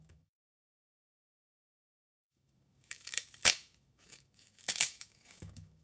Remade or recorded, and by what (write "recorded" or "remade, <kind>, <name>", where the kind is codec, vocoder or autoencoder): remade, autoencoder, DAC-VAE